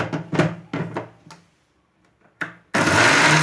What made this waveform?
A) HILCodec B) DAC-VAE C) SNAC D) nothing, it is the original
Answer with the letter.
D